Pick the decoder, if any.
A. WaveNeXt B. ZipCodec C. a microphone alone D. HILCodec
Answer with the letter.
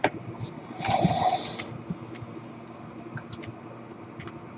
C